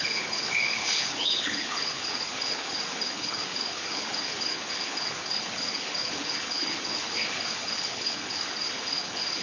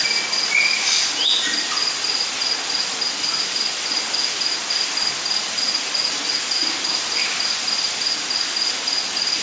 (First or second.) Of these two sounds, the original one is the second